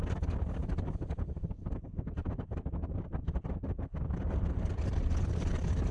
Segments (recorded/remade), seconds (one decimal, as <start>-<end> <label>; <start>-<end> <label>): 0.0-5.9 remade